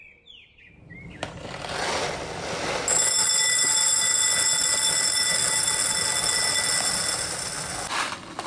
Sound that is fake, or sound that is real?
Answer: real